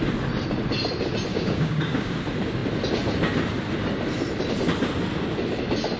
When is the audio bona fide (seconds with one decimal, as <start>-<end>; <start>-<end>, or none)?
0.0-1.3; 2.1-6.0

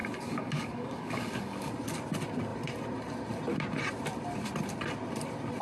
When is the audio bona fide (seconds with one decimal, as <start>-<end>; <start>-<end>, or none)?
1.7-5.6